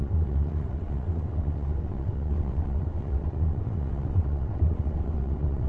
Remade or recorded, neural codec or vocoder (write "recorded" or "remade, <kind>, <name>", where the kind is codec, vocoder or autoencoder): remade, vocoder, WaveNeXt